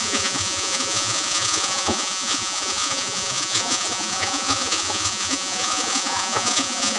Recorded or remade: remade